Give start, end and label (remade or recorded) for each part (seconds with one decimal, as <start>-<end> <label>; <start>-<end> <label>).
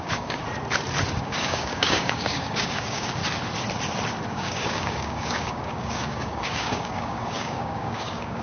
0.0-0.4 remade; 0.4-1.2 recorded; 1.2-3.2 remade; 3.2-4.3 recorded; 4.3-8.4 remade